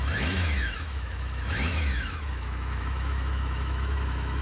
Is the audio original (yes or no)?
no